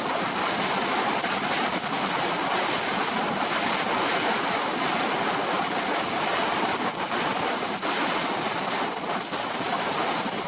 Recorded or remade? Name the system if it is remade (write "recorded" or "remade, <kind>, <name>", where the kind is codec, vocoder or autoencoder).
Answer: recorded